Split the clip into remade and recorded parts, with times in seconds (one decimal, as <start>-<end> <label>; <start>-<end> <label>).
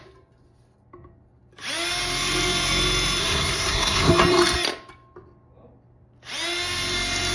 0.0-3.2 recorded; 3.2-4.1 remade; 4.1-7.3 recorded